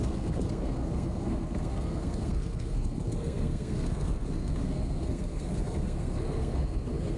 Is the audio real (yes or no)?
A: no